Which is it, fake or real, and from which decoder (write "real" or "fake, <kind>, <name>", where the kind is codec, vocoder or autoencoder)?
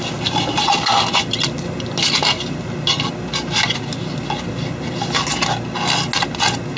real